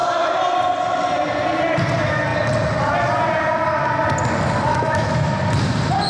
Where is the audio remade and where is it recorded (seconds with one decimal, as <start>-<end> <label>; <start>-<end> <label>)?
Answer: 0.0-4.7 recorded; 4.7-5.3 remade; 5.3-6.1 recorded